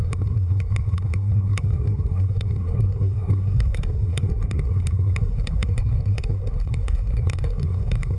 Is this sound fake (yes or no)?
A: yes